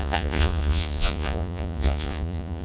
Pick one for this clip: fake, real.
fake